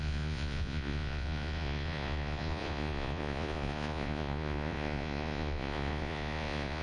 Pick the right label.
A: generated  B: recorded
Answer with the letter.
A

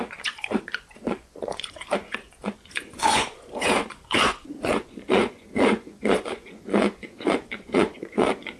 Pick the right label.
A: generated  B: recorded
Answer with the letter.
A